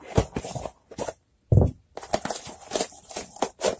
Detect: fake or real real